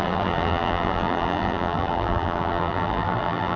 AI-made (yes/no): yes